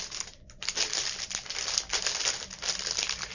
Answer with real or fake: real